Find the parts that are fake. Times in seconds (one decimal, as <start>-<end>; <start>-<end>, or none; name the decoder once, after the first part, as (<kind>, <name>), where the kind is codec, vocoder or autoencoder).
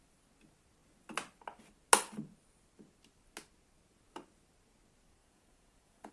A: 5.2-6.1 (vocoder, Vocos)